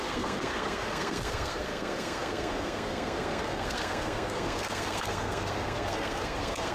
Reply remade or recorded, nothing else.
remade